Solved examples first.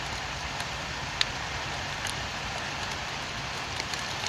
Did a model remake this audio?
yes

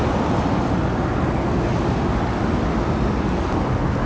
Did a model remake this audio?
no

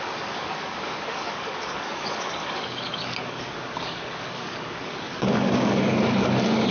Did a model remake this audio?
yes